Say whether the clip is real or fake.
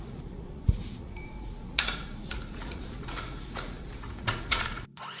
fake